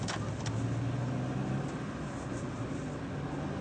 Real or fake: real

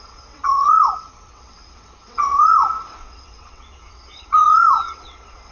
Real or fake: fake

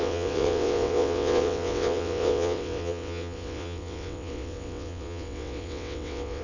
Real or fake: fake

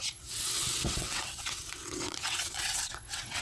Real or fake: fake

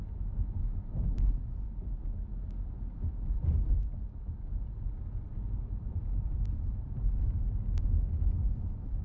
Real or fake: real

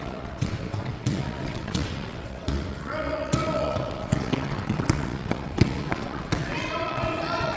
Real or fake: fake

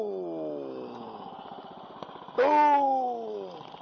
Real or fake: real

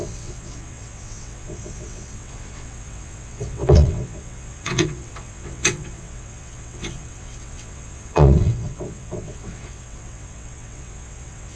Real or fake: fake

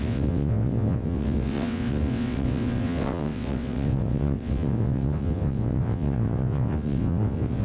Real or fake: fake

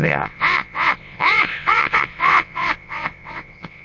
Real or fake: fake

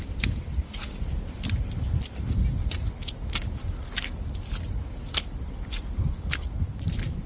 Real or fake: real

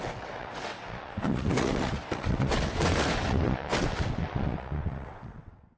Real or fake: fake